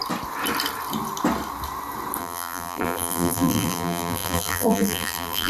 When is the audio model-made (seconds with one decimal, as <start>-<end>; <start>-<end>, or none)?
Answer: 2.2-5.5